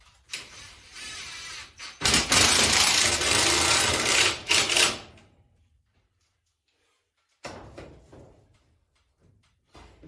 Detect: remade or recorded remade